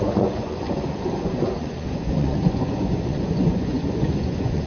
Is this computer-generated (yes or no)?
yes